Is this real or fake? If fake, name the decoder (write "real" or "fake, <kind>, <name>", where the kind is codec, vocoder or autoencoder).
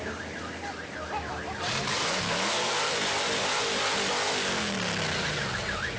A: real